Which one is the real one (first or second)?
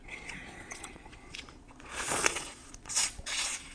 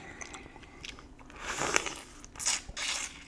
second